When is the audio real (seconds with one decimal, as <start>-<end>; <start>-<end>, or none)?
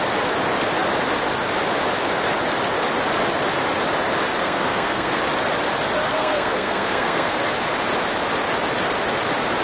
0.0-4.4; 5.2-6.1; 7.4-9.6